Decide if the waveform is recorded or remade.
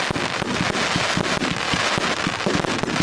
recorded